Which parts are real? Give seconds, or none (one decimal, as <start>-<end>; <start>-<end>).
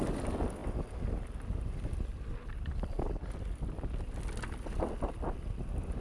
0.0-6.0